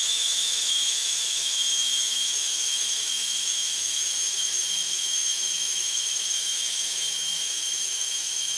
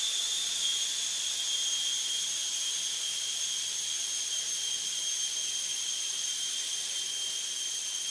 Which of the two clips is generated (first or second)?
first